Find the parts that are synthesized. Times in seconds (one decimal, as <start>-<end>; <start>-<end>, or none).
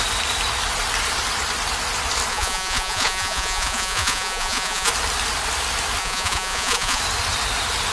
2.3-4.9; 6.0-7.0